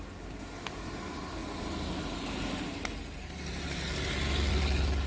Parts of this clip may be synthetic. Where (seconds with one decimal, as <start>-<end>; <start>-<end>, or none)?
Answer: none